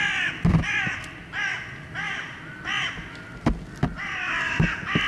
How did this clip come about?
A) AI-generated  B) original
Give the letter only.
B